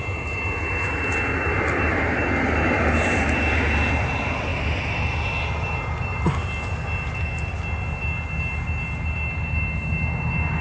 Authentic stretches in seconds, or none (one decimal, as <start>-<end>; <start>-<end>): 0.0-10.6